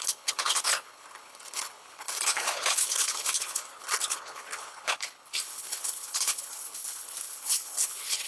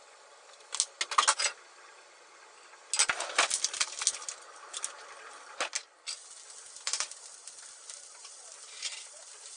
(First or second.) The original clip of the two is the second